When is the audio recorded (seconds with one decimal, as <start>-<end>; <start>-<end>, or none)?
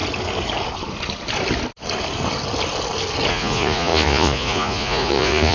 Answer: 0.0-3.3